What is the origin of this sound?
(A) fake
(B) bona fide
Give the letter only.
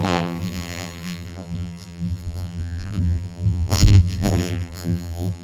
A